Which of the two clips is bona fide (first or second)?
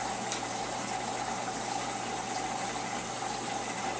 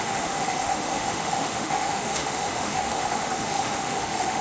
first